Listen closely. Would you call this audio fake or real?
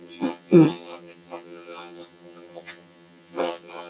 fake